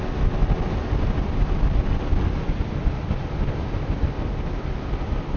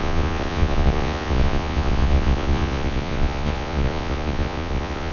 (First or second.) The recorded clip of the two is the first